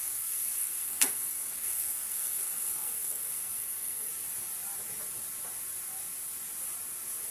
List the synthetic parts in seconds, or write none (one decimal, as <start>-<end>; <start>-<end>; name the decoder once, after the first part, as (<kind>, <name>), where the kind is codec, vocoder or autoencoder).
0.0-4.1 (codec, SNAC)